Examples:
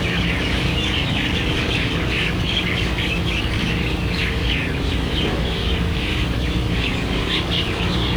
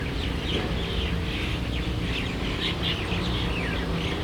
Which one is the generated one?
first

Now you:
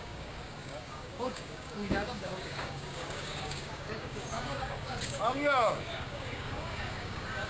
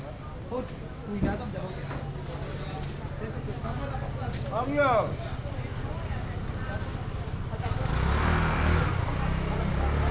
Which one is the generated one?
first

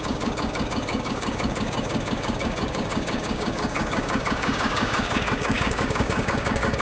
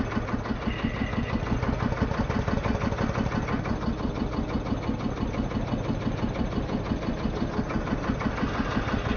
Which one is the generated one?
first